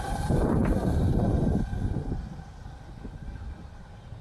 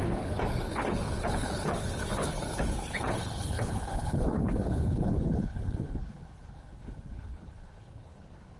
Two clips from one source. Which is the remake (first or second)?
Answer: second